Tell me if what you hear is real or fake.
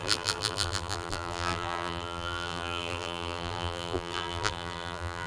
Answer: fake